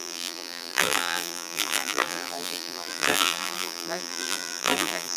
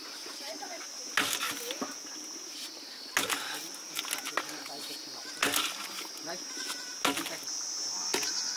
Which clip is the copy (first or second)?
first